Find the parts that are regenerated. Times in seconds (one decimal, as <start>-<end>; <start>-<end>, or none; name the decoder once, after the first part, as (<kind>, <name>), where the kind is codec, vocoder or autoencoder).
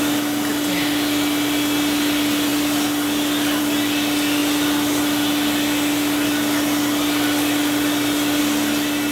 none